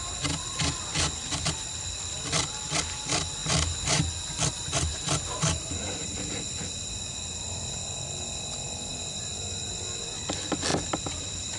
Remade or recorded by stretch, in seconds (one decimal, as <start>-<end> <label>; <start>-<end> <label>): 0.0-4.9 recorded; 4.9-6.3 remade; 6.3-11.6 recorded